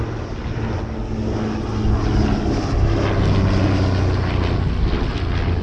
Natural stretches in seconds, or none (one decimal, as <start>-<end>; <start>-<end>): 0.0-5.6